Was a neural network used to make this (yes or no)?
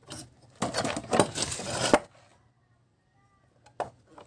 no